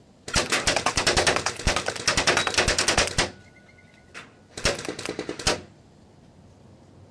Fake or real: real